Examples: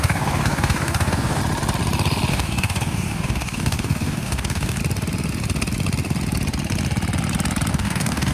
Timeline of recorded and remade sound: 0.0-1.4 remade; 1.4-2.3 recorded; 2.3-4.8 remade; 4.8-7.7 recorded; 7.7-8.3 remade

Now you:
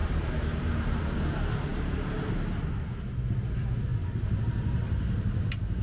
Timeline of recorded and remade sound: 0.0-1.0 remade; 1.0-5.8 recorded

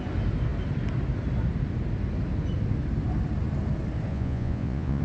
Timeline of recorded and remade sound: 0.0-4.1 recorded; 4.1-5.0 remade